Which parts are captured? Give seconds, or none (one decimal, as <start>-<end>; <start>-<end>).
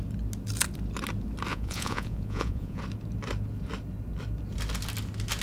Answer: 0.0-1.5; 2.8-5.4